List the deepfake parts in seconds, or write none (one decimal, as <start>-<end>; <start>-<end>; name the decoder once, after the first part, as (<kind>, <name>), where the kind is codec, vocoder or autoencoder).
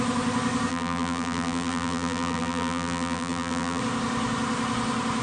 0.7-3.8 (vocoder, BigVGAN v2)